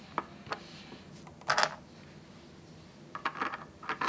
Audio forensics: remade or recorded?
recorded